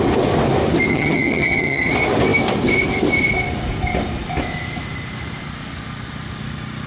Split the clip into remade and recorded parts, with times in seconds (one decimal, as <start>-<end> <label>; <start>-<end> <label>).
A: 0.0-0.9 recorded; 0.9-1.9 remade; 1.9-6.9 recorded